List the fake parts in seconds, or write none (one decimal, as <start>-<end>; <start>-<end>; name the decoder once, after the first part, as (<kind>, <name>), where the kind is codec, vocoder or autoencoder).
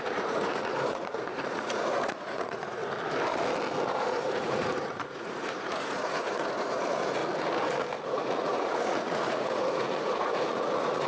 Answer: 0.0-2.8 (vocoder, Vocos); 3.9-7.2; 8.1-11.1